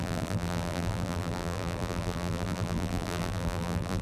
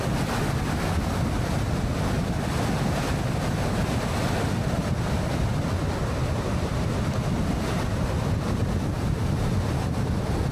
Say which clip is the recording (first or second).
second